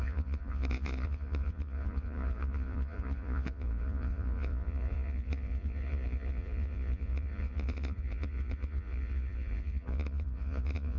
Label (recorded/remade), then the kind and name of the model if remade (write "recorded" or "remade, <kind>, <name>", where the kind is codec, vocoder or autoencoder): remade, vocoder, Vocos